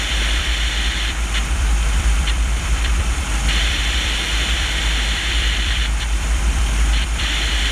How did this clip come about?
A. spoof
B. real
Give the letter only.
A